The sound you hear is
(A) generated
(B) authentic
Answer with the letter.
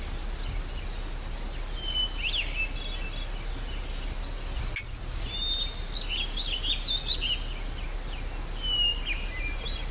B